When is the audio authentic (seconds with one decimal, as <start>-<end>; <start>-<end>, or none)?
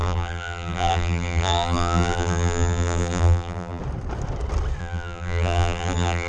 3.8-4.8